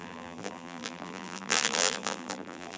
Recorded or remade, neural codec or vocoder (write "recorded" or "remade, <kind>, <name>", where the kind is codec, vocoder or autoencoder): remade, vocoder, BigVGAN v2